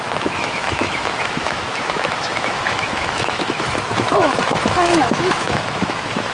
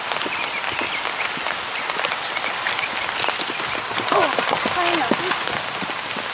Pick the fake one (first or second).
first